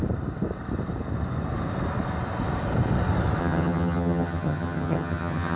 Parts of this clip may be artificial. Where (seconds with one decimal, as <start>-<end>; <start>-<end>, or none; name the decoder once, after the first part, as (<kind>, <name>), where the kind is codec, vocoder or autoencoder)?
3.4-5.6 (vocoder, HiFi-GAN)